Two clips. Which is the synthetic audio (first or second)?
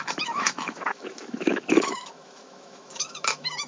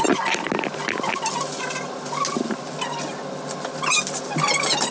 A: first